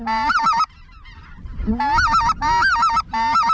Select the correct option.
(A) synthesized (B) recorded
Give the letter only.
B